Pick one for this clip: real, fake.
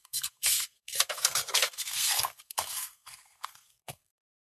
fake